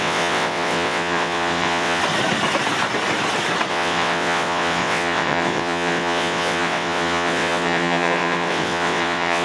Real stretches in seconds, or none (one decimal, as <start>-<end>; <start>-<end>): 2.0-3.7